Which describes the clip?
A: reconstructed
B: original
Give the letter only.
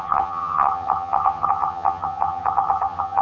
A